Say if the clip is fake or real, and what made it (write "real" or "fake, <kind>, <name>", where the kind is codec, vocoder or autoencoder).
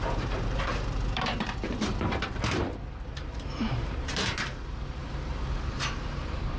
fake, vocoder, BigVGAN v2